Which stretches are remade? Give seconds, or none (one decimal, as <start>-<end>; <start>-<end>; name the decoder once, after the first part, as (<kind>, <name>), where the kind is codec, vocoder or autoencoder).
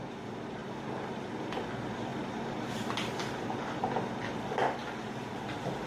0.0-2.1 (vocoder, BigVGAN v2); 2.7-5.9